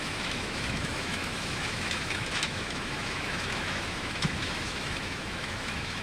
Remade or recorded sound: remade